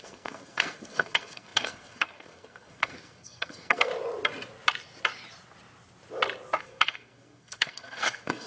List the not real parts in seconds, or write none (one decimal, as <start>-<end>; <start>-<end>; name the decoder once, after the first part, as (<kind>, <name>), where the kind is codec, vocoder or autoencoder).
0.0-3.9 (codec, SNAC); 6.6-8.5